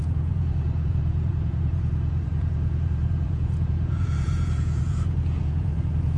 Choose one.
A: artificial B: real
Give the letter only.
A